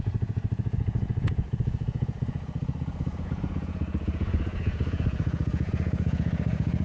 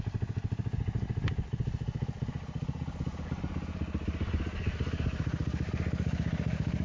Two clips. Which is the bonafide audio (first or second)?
second